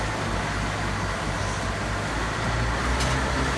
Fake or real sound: real